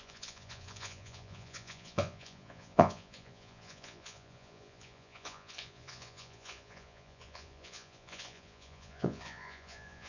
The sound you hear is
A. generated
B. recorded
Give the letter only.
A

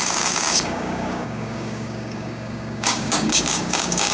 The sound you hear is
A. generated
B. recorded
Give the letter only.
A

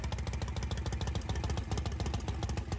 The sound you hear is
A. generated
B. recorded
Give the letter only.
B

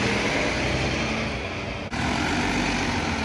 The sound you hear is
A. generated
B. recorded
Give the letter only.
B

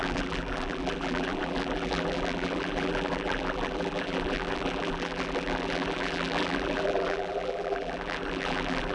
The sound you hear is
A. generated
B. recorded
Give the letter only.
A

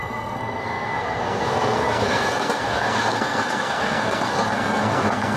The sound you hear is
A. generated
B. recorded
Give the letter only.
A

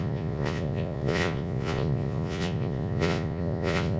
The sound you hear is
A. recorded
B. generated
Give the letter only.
B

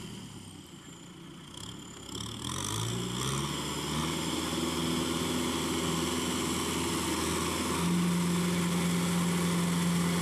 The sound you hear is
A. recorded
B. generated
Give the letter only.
A